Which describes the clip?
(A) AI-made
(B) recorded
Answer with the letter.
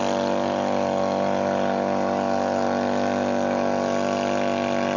B